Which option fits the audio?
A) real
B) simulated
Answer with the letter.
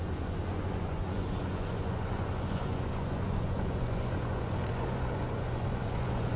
B